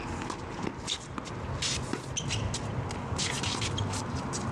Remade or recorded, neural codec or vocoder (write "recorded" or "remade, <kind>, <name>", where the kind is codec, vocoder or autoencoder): recorded